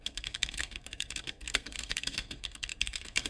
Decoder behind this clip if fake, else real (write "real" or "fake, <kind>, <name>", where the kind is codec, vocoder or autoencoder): fake, codec, SNAC